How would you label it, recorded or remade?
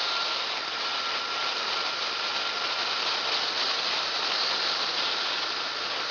recorded